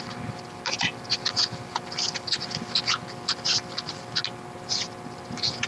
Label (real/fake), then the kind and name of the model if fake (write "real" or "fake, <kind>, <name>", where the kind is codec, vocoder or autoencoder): real